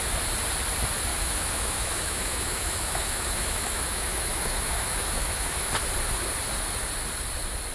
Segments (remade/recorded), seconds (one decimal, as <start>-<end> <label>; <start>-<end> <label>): 0.0-1.1 recorded; 1.1-5.7 remade; 5.7-7.7 recorded